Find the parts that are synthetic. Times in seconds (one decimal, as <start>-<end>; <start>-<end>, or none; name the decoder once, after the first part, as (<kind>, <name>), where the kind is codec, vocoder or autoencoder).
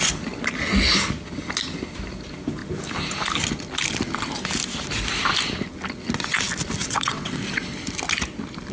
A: 6.8-7.4 (vocoder, WaveNeXt)